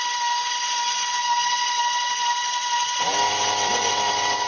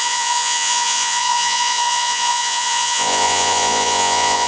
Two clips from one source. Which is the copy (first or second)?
second